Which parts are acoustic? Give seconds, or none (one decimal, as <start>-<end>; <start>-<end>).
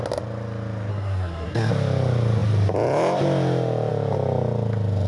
0.0-0.9; 1.7-5.1